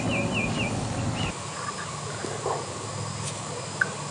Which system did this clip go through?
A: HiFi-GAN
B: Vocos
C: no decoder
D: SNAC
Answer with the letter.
C